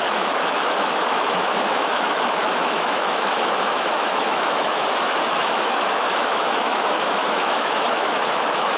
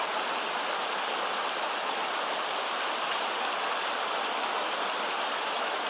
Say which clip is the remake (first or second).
first